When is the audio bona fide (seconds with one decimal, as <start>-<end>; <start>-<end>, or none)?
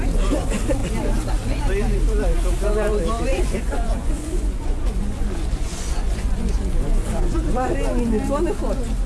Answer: 0.0-3.3; 7.7-9.1